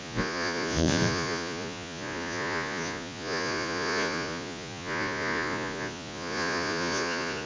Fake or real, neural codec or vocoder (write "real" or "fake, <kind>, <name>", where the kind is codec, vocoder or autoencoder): fake, vocoder, Vocos